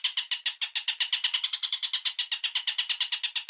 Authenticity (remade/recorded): recorded